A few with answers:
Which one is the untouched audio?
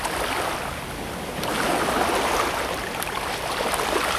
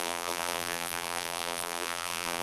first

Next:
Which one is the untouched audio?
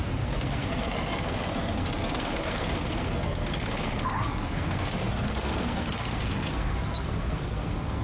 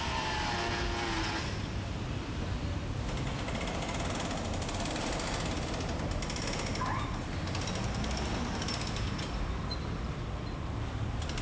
second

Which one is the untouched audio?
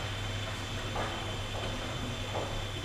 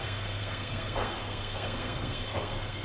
first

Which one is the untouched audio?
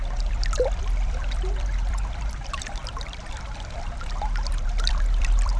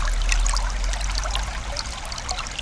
second